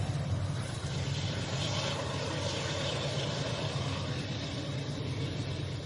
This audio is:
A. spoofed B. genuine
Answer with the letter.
B